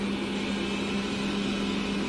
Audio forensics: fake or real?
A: real